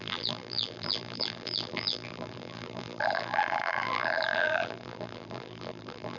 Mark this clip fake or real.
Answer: fake